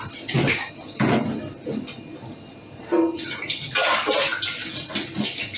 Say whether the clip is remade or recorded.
recorded